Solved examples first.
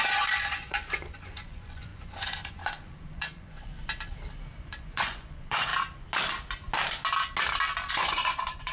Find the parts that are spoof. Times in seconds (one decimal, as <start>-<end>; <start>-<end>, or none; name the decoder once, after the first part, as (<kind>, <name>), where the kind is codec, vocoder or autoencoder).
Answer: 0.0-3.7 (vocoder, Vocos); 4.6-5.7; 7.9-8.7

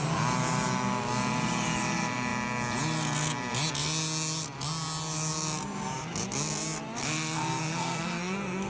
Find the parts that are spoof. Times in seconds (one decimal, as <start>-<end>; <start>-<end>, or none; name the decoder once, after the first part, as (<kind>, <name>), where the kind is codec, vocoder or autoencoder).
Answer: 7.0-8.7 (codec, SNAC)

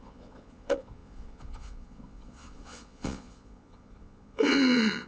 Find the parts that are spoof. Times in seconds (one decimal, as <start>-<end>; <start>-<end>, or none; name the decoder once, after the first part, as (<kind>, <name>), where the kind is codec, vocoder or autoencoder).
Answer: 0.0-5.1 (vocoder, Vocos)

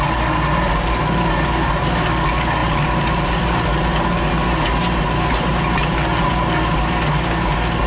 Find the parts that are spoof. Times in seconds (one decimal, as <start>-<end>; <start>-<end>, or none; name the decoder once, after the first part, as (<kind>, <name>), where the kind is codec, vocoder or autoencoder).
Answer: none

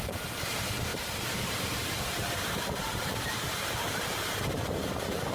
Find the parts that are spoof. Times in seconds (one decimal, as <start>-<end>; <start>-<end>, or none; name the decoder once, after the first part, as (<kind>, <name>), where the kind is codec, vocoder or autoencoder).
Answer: 0.0-5.3 (vocoder, BigVGAN v2)

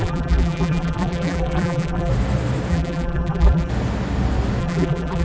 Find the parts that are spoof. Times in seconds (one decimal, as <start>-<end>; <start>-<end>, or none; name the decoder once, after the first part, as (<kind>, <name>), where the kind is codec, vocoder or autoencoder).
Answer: 0.0-2.1 (vocoder, BigVGAN v2); 2.7-3.7; 4.6-5.2

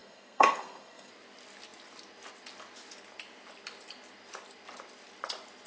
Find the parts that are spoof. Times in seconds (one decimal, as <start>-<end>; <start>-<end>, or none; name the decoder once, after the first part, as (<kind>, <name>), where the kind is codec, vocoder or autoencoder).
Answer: 0.0-1.1 (codec, SNAC)